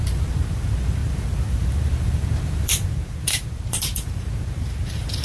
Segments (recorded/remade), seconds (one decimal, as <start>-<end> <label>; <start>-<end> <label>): 0.0-5.2 remade